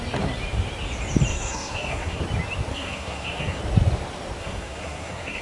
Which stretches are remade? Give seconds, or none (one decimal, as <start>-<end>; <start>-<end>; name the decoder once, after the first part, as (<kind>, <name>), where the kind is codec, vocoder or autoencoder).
1.3-2.2 (codec, SNAC); 2.7-3.6; 4.4-5.4